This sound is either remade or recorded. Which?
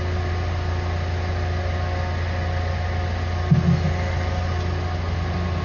recorded